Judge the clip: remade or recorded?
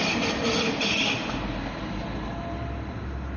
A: recorded